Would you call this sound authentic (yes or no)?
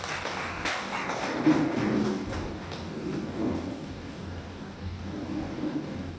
no